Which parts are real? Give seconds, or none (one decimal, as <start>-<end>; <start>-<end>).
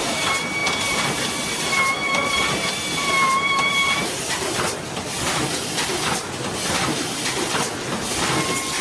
0.0-8.8